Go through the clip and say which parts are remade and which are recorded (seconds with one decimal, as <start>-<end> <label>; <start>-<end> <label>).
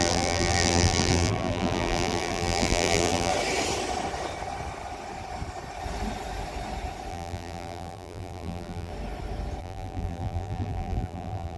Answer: 0.0-3.3 remade; 3.3-7.1 recorded; 7.1-8.9 remade; 8.9-9.6 recorded; 9.6-11.6 remade